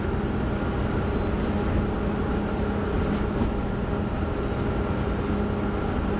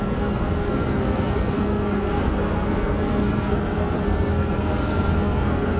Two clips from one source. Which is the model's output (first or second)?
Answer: second